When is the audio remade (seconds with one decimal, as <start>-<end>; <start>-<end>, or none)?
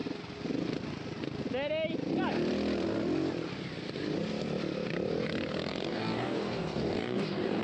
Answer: 5.7-7.6